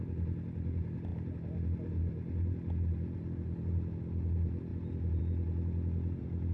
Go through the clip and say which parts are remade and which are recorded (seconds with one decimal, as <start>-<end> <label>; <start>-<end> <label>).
0.0-6.5 recorded